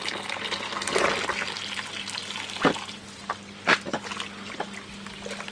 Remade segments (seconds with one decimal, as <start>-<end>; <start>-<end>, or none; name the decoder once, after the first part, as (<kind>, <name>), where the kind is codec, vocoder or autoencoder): none

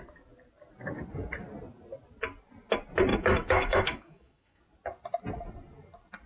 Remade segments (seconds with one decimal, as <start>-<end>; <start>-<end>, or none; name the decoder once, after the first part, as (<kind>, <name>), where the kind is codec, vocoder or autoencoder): 3.1-4.6 (autoencoder, DAC-VAE)

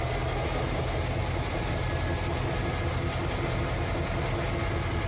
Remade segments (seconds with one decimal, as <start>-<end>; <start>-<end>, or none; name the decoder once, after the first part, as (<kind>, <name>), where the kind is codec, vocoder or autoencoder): none

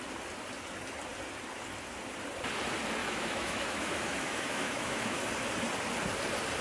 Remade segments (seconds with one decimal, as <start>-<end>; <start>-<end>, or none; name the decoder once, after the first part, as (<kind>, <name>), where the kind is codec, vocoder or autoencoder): 3.0-5.3 (autoencoder, DAC-VAE)